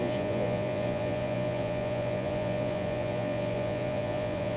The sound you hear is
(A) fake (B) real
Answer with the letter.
A